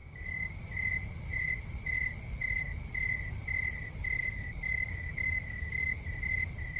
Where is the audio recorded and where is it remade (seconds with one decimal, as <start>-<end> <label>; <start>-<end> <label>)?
0.0-0.6 remade; 0.6-4.2 recorded; 4.2-6.0 remade; 6.0-6.8 recorded